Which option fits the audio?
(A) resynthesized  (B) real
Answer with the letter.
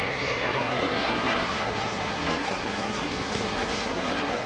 A